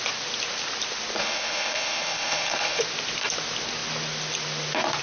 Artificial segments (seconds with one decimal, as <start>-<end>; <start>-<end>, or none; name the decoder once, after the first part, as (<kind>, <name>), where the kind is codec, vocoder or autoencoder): 1.2-2.8 (codec, HILCodec)